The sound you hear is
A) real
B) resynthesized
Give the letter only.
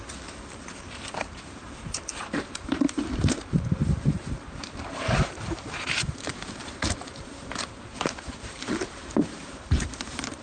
B